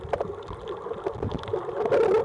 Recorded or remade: recorded